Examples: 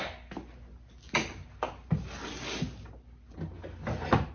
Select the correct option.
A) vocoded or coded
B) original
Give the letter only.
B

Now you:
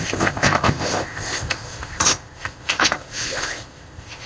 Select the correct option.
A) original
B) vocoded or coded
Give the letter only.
B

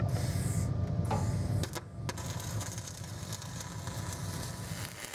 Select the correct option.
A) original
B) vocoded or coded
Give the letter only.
A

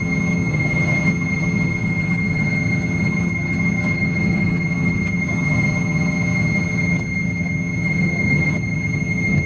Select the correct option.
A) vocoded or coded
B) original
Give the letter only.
A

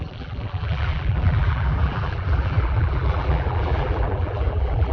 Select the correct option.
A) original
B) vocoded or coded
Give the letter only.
B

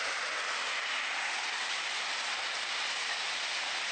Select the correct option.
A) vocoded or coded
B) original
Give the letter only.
B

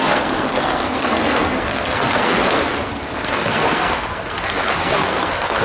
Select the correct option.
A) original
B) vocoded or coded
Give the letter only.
B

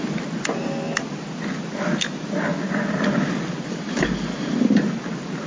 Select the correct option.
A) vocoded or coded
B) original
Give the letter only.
B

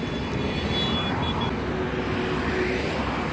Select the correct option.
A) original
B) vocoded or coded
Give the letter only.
A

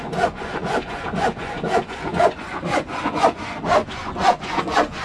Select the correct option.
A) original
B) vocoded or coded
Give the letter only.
B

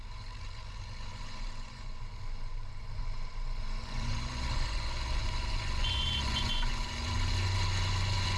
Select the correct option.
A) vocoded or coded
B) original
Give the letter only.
A